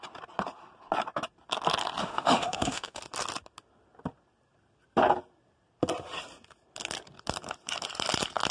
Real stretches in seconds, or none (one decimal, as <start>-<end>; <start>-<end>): 0.0-2.0; 3.0-8.5